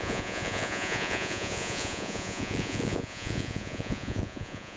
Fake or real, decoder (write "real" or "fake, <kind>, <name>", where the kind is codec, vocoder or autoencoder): fake, vocoder, Vocos